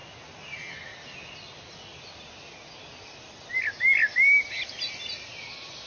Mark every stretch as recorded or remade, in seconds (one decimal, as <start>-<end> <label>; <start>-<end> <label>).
0.0-5.9 recorded